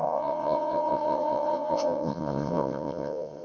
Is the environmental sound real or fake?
fake